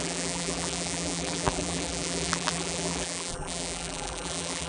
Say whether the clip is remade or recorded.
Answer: remade